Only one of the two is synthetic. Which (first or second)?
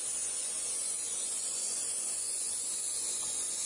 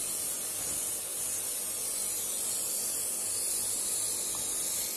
first